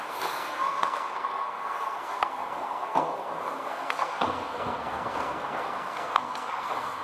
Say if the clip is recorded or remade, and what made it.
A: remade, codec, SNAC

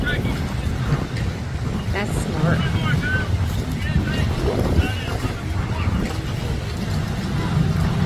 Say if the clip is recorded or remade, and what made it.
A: recorded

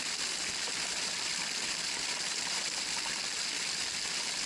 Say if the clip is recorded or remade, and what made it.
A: recorded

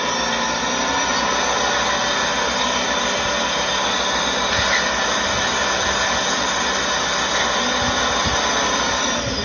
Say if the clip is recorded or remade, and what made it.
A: recorded